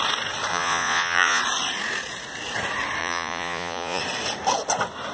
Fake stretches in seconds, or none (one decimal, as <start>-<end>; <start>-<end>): 0.5-1.4; 3.0-4.0

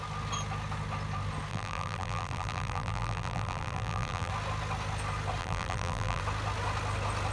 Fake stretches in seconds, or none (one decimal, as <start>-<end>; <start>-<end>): 1.5-4.3; 5.4-6.2

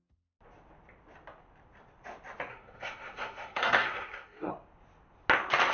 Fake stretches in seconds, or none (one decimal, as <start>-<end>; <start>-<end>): 2.5-4.5

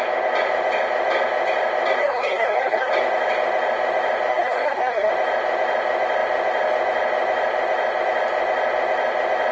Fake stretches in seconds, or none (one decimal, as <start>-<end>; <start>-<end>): 2.0-2.9; 4.3-5.1

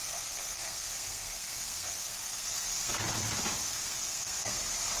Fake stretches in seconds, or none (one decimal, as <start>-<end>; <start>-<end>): 0.0-3.0; 3.6-4.6